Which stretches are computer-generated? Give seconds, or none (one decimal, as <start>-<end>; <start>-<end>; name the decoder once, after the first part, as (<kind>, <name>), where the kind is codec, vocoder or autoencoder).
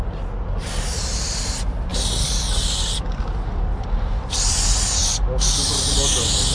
none